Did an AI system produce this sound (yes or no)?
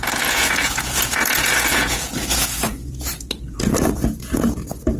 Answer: yes